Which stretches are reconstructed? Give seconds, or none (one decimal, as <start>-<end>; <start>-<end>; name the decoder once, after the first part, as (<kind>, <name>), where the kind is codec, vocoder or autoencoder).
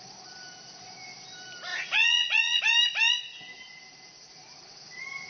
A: 1.7-2.6 (vocoder, Vocos)